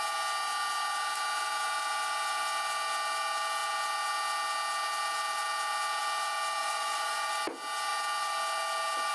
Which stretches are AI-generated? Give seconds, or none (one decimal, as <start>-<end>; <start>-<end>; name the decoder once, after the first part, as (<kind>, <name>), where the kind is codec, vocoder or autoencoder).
6.6-7.3 (vocoder, Vocos)